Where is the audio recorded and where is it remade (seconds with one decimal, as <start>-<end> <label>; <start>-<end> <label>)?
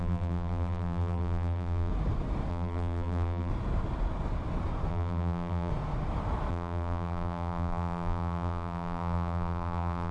0.0-1.9 remade; 1.9-2.5 recorded; 2.5-3.5 remade; 3.5-4.9 recorded; 4.9-5.7 remade; 5.7-6.5 recorded; 6.5-10.1 remade